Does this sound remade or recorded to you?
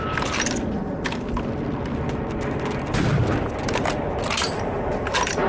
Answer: recorded